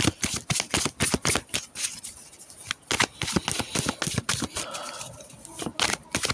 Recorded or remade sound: recorded